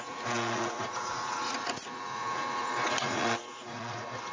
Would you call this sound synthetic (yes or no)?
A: yes